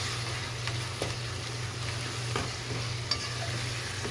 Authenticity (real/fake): real